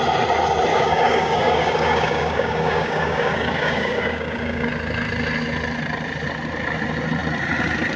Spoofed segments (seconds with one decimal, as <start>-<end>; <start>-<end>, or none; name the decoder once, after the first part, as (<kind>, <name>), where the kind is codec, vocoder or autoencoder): 0.7-4.7 (codec, DAC)